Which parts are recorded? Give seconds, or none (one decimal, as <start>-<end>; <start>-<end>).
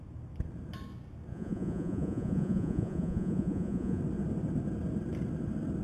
0.0-1.3; 4.0-5.8